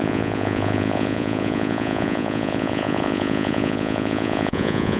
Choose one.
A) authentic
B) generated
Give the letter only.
B